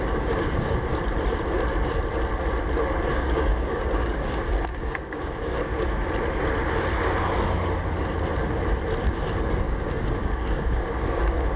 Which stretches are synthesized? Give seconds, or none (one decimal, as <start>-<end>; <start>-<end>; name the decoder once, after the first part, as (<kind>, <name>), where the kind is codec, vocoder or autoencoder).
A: 0.0-0.9 (codec, DAC); 3.1-5.7; 9.5-11.6